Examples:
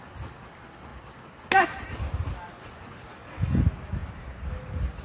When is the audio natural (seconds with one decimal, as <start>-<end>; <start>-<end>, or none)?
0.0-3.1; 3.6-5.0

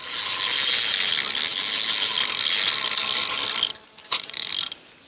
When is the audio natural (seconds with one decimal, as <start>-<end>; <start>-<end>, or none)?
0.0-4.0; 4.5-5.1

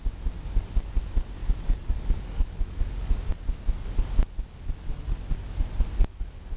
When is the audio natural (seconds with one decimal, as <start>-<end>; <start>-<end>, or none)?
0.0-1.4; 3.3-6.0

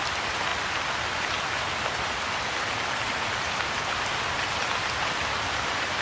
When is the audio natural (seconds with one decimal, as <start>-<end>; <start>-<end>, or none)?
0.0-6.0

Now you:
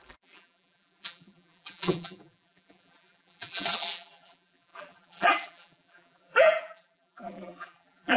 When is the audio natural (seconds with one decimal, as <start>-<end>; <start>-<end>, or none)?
none